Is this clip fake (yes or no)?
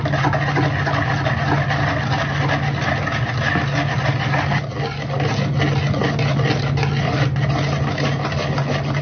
no